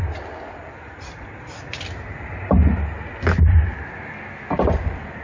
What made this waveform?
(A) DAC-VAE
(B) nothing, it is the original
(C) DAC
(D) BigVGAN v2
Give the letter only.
B